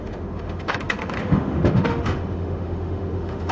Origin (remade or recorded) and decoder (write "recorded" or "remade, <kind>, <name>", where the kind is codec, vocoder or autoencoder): remade, autoencoder, DAC-VAE